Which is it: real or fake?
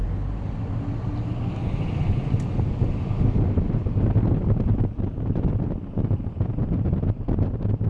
real